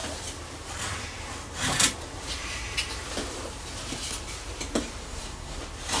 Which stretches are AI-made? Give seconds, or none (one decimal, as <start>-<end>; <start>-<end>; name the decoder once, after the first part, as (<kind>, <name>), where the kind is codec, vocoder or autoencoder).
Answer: 5.0-5.6 (codec, SNAC)